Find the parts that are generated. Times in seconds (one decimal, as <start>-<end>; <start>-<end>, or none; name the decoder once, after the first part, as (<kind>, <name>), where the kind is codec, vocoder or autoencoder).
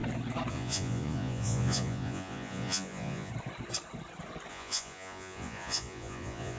0.5-3.3 (vocoder, Vocos); 4.5-6.6